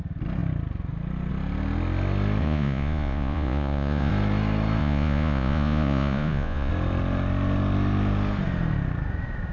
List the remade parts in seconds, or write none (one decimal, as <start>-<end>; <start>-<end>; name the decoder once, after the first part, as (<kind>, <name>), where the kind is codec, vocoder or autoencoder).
2.4-4.1 (vocoder, Vocos); 4.8-6.7